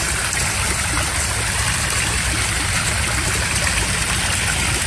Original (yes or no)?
yes